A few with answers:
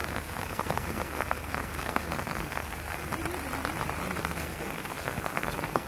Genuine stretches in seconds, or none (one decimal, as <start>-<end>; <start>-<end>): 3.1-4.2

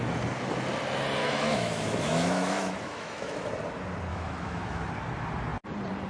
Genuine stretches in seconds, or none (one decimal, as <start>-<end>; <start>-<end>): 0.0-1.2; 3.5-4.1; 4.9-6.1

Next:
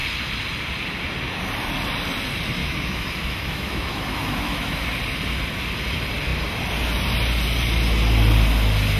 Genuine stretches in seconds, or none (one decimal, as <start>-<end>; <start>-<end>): 0.0-2.6; 4.8-9.0

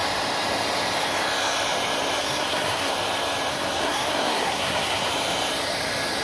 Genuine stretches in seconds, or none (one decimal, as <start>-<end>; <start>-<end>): 0.0-2.2; 2.9-3.5; 5.1-6.2